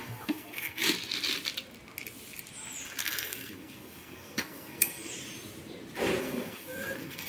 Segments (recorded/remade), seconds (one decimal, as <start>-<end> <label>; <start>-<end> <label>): 0.0-0.8 remade; 0.8-3.0 recorded; 3.0-5.1 remade; 5.1-6.2 recorded; 6.2-7.3 remade